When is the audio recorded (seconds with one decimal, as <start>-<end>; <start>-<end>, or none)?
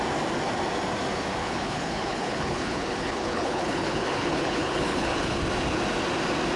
0.0-1.4; 5.4-6.6